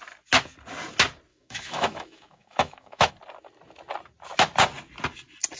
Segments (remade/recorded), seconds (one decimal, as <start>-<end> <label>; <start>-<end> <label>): 0.0-1.3 recorded; 1.3-3.1 remade; 3.1-5.6 recorded